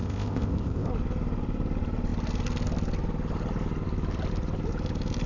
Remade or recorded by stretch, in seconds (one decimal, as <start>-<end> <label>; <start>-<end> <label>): 0.0-0.9 remade; 0.9-5.3 recorded